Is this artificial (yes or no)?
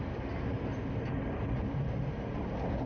no